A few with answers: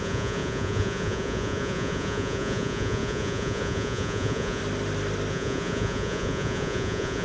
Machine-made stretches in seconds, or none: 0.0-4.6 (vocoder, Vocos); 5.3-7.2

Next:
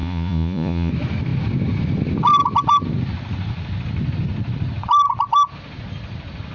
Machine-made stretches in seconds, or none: 0.0-0.9 (vocoder, Vocos)

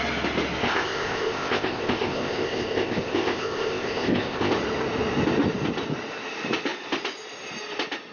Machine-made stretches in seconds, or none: 0.6-4.5 (codec, ZipCodec)

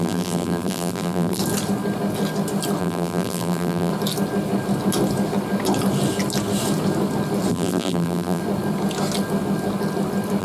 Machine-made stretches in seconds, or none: 0.0-1.4 (vocoder, BigVGAN v2); 2.8-3.9; 7.5-8.4